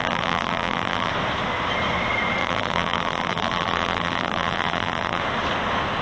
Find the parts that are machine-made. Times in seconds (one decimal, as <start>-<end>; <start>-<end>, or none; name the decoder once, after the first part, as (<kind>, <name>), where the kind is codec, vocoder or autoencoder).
0.0-1.1 (vocoder, BigVGAN v2); 2.4-5.2

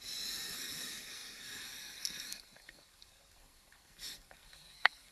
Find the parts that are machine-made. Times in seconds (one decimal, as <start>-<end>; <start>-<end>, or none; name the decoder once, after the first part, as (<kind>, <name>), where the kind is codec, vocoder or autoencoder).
0.0-5.1 (codec, SNAC)

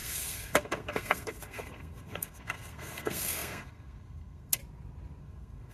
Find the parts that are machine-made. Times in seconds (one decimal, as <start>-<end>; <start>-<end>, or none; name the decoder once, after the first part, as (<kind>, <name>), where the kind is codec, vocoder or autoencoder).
0.0-4.6 (codec, SNAC); 5.2-5.7

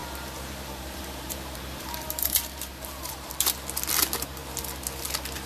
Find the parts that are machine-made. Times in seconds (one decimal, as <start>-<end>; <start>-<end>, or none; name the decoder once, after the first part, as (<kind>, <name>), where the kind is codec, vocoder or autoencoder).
0.0-3.3 (vocoder, BigVGAN v2)

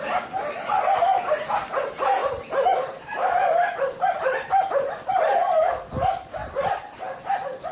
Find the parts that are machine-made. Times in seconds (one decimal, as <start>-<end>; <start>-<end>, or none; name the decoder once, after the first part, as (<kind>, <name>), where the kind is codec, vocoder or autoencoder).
none